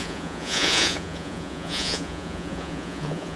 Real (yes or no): no